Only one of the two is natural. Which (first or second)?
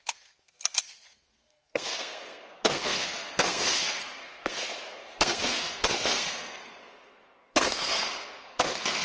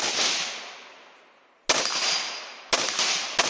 second